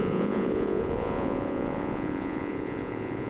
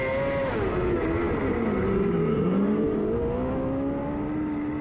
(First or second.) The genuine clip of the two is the second